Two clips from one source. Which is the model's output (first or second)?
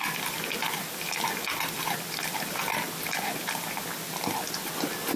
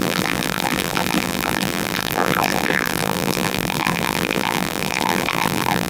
second